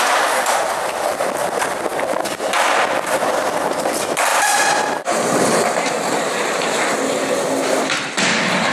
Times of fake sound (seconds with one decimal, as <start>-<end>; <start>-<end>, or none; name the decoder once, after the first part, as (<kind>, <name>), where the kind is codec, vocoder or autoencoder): 4.3-6.8 (vocoder, BigVGAN v2)